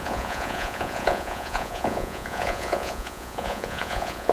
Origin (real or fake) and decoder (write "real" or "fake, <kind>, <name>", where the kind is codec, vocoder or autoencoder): fake, vocoder, Vocos